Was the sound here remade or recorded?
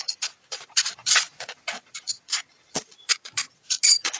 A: remade